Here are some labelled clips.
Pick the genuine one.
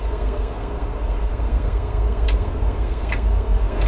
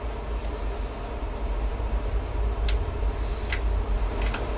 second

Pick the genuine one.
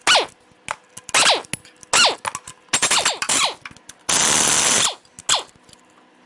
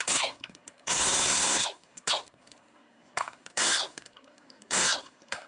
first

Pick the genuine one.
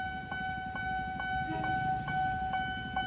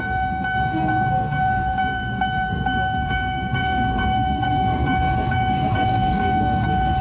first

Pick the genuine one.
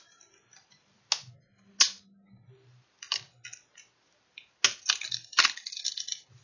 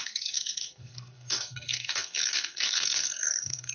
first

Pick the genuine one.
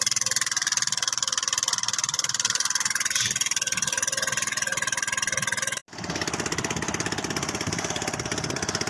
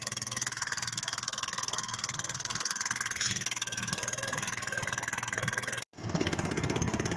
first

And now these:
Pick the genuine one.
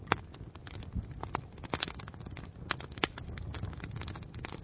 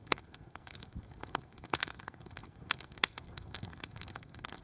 first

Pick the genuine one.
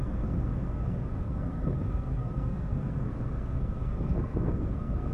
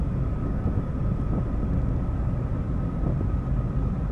second